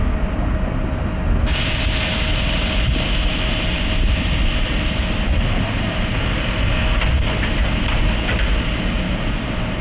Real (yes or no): yes